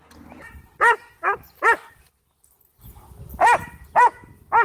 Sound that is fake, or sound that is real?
real